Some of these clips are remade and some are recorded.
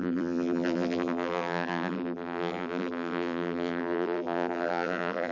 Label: remade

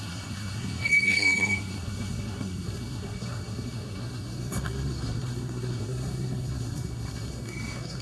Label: remade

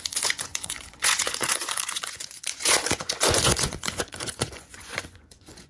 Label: remade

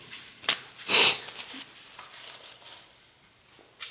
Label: recorded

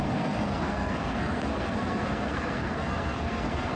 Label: remade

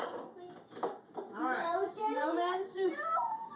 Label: remade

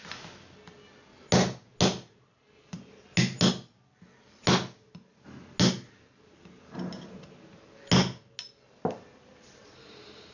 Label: recorded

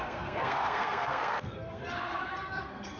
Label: remade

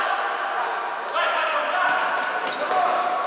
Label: recorded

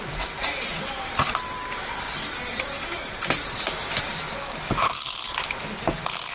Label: remade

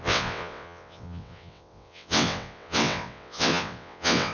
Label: remade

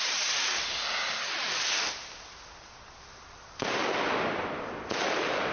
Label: recorded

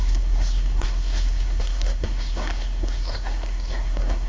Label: remade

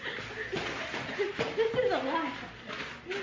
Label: recorded